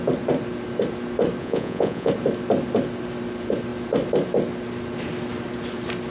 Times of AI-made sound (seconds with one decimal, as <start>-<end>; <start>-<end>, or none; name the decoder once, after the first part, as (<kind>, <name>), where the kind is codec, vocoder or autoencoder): 1.4-2.1 (vocoder, Vocos)